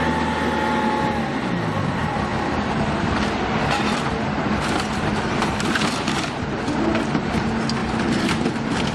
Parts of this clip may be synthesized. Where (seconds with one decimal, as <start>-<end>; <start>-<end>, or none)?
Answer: none